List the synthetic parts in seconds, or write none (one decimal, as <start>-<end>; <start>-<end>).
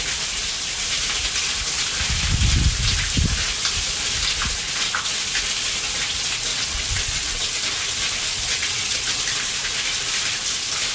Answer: 6.5-7.5; 8.3-9.2